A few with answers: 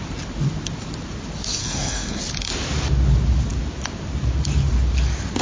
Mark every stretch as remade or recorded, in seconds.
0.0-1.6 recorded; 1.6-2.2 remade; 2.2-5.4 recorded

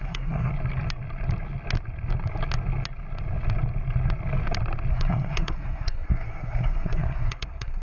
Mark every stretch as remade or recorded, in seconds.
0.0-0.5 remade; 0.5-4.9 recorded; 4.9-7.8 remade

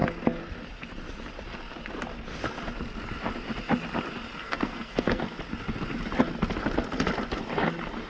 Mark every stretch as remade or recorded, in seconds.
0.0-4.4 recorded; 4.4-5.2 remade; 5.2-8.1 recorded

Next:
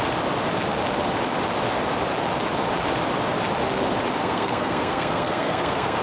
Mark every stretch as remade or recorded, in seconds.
0.0-4.2 recorded; 4.2-6.0 remade

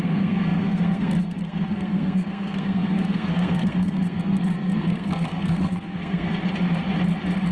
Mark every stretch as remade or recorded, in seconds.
0.0-6.3 remade; 6.3-7.5 recorded